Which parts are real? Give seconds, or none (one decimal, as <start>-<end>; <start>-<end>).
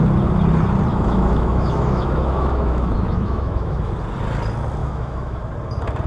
0.0-0.9; 3.9-4.8; 5.4-6.1